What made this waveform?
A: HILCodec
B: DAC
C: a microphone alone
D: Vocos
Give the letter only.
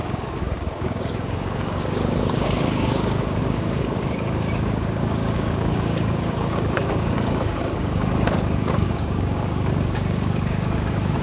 B